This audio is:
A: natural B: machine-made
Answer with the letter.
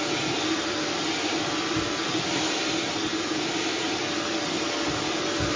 A